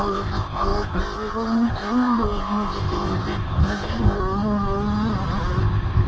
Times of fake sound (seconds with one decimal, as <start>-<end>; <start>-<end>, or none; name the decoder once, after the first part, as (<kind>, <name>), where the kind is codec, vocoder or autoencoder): 0.0-4.2 (codec, ZipCodec); 5.6-6.1